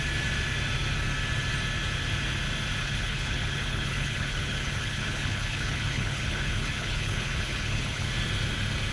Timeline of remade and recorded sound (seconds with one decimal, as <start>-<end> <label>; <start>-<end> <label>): 0.0-2.8 recorded; 2.8-8.1 remade; 8.1-8.9 recorded